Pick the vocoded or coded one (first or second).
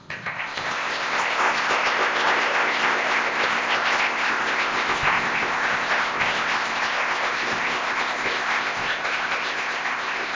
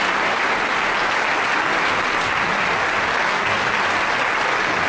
first